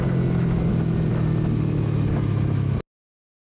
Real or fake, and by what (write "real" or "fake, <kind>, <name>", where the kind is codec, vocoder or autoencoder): real